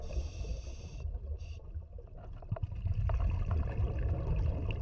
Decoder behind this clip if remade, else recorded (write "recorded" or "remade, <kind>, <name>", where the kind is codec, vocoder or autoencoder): recorded